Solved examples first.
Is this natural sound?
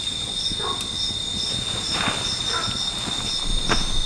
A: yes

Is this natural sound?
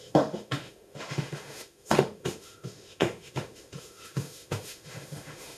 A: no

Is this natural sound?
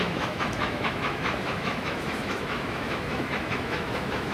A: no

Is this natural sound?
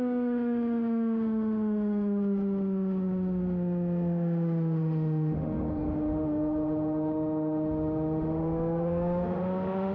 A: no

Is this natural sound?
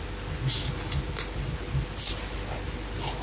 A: yes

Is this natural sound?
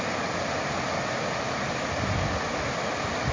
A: yes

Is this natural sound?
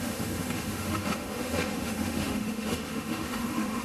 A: no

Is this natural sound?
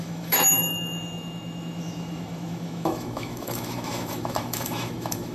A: no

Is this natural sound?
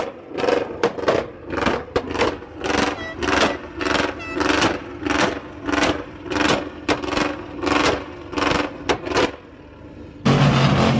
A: yes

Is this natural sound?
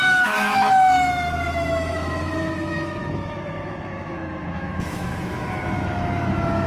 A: no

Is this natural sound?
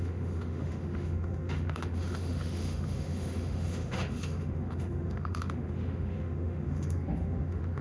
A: no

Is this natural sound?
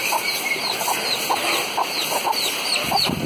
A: yes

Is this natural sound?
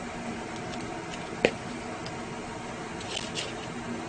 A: yes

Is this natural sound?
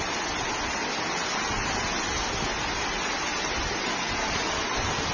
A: yes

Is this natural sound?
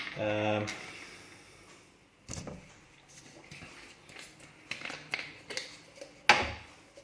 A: yes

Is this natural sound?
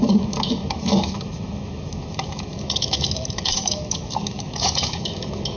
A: no